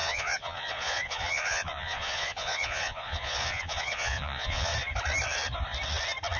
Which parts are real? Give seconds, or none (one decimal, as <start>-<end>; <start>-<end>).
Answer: 4.7-6.4